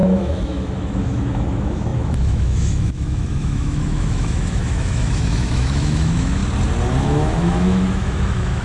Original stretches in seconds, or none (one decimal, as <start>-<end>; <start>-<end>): 6.4-7.0